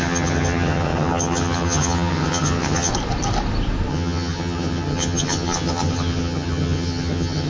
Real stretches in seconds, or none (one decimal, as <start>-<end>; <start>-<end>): 2.9-3.9